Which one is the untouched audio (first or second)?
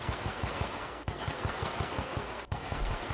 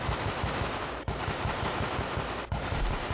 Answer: second